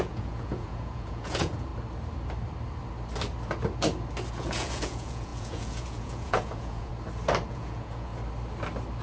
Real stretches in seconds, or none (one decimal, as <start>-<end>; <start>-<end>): 1.7-4.3; 6.9-7.5; 8.1-9.0